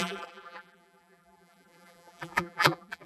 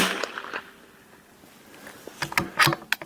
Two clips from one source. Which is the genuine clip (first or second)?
second